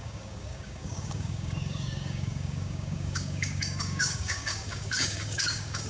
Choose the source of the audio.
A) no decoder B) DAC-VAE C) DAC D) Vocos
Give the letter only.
C